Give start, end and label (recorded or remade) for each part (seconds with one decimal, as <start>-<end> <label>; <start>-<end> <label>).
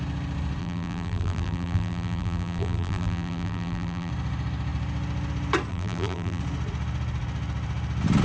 0.0-0.6 recorded; 0.6-4.1 remade; 4.1-5.7 recorded; 5.7-6.4 remade; 6.4-8.2 recorded